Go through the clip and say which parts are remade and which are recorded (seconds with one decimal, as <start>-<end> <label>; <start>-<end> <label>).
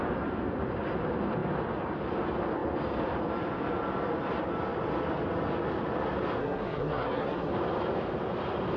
0.0-6.4 recorded; 6.4-7.5 remade; 7.5-8.8 recorded